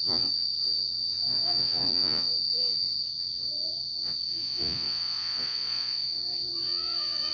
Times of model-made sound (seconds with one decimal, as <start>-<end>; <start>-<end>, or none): 0.0-7.3

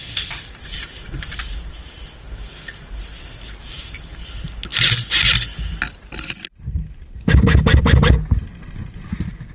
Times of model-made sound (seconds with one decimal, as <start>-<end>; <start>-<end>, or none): none